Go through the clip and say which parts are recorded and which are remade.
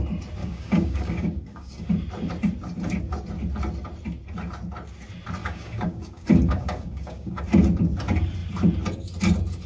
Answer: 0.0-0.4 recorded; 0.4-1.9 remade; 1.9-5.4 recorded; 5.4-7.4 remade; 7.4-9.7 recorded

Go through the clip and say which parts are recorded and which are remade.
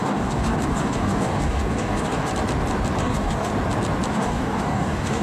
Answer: 0.0-2.3 remade; 2.3-3.0 recorded; 3.0-3.5 remade; 3.5-4.1 recorded; 4.1-5.2 remade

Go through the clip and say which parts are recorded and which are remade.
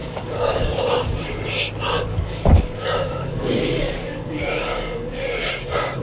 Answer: 0.0-0.8 remade; 0.8-1.9 recorded; 1.9-5.5 remade; 5.5-6.0 recorded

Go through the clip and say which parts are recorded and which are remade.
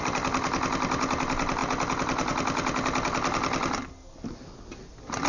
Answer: 0.0-5.3 recorded